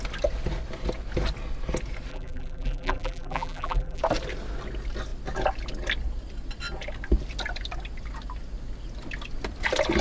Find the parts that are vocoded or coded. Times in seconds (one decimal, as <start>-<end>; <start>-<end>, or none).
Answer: 2.1-4.0